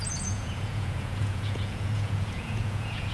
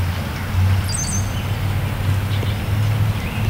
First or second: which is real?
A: second